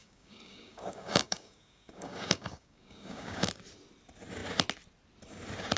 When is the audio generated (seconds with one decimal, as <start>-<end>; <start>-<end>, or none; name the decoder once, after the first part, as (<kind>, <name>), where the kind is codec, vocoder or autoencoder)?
0.0-3.5 (codec, DAC)